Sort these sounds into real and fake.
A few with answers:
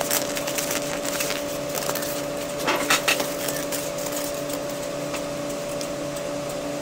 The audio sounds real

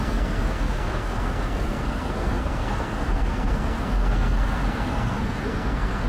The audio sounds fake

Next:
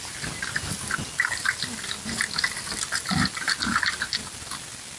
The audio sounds real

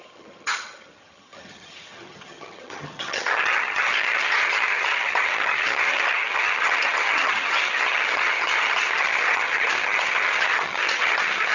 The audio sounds fake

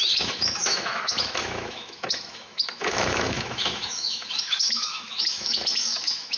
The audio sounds fake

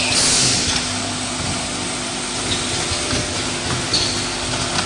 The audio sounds real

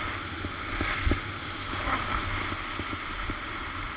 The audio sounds real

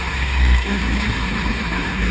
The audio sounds fake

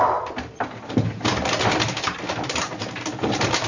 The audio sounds real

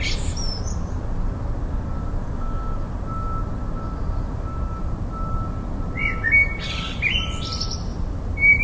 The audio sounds real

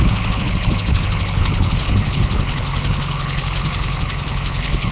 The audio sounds fake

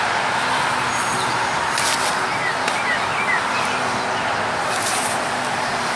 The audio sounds real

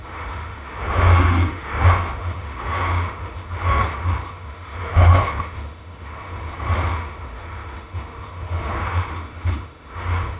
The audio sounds fake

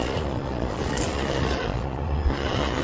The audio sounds fake